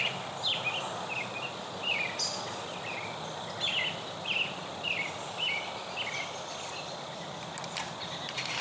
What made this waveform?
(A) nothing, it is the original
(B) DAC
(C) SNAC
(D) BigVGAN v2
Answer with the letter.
A